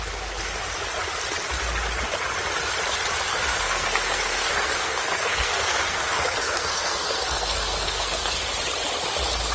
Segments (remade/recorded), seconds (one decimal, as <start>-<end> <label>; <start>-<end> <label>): 0.0-3.3 recorded; 3.3-8.5 remade; 8.5-9.5 recorded